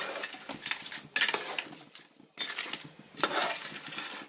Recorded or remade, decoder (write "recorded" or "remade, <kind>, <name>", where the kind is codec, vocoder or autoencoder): recorded